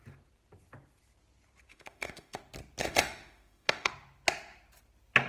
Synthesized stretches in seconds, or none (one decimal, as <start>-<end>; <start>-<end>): 1.7-2.4; 2.8-3.9